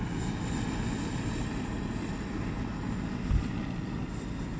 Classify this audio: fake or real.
real